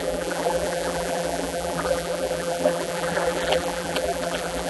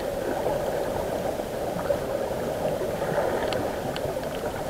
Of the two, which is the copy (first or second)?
first